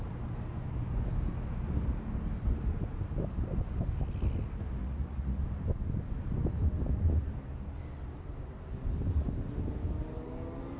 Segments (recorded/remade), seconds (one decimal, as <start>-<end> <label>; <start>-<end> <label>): 0.0-4.8 recorded; 4.8-5.4 remade; 5.4-10.8 recorded